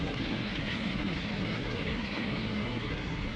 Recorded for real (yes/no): no